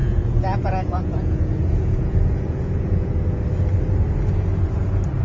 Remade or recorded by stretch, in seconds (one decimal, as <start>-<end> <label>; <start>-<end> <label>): 0.0-3.1 remade; 3.1-5.2 recorded